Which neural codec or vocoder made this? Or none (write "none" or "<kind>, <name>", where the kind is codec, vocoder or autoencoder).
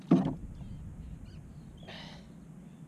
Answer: none